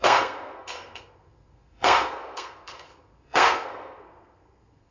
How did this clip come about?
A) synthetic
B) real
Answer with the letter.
A